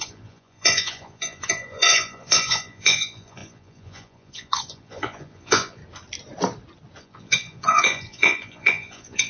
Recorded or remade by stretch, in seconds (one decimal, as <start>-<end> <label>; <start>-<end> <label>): 0.0-5.8 remade; 5.8-7.0 recorded; 7.0-9.3 remade